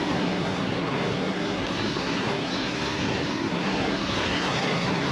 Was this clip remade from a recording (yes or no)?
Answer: yes